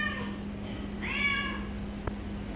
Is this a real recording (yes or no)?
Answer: yes